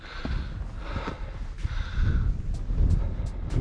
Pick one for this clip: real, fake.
real